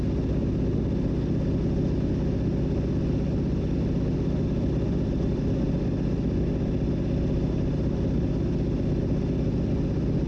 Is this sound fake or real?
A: real